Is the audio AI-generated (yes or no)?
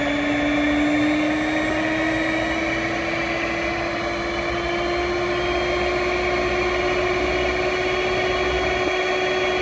no